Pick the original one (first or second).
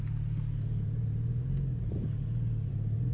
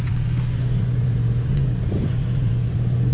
first